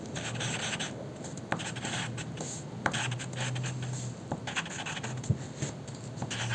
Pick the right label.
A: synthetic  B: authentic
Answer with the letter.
B